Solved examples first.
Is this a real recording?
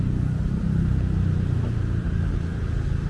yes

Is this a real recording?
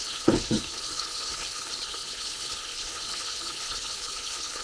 no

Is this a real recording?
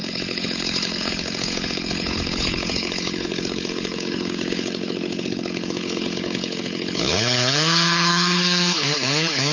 no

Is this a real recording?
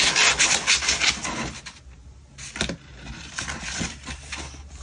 yes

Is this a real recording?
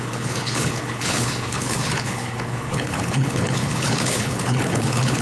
no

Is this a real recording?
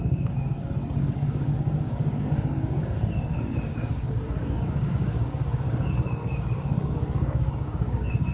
no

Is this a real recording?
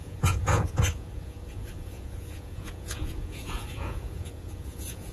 no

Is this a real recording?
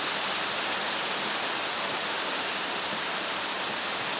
yes